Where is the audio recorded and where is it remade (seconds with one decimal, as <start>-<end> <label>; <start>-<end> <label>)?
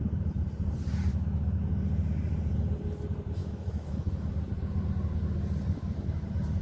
0.0-1.1 recorded; 1.1-1.6 remade; 1.6-3.4 recorded; 3.4-4.3 remade; 4.3-6.6 recorded